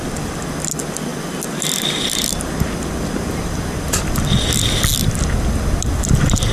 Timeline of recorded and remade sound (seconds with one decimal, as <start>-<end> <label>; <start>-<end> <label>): 0.0-6.5 recorded